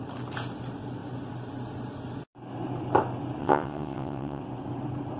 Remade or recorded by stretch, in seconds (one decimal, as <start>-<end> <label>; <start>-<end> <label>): 0.0-3.4 recorded; 3.4-4.4 remade; 4.4-5.2 recorded